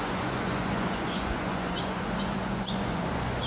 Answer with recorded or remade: remade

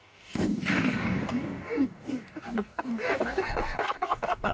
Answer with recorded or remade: remade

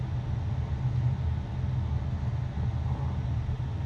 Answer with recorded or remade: recorded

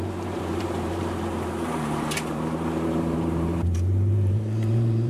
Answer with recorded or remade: remade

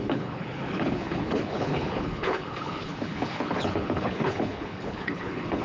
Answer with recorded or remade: remade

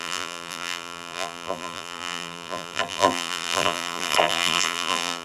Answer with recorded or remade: remade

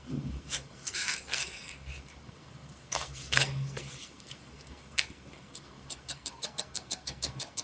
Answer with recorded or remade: remade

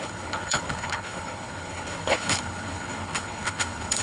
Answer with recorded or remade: remade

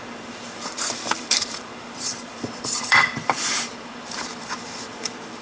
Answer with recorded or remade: remade